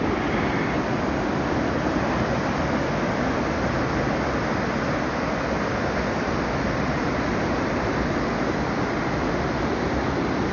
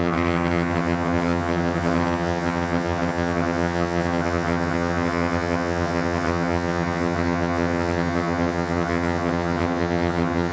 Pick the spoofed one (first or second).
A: second